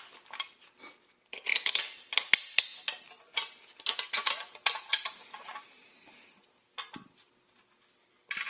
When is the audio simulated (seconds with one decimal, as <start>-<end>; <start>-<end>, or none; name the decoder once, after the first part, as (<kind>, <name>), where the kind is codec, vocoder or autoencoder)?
none